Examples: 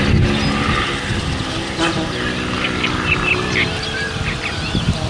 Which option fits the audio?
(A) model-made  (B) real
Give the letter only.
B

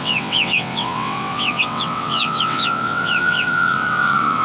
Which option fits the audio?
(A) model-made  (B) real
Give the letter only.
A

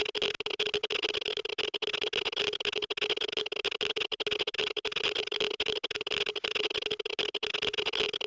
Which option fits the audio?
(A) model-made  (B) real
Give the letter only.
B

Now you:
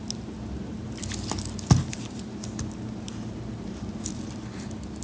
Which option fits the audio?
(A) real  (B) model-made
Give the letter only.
A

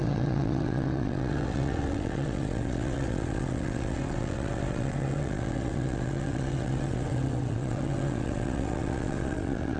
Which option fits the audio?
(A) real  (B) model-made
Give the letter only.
B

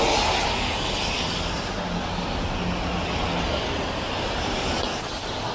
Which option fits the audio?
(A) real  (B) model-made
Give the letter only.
A